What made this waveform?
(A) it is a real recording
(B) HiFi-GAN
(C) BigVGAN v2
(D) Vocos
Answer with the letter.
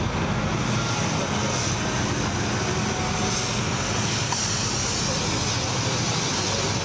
A